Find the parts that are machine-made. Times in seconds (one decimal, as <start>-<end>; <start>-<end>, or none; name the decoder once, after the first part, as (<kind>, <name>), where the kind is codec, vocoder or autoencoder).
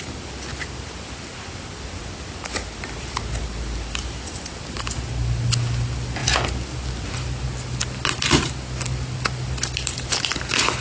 none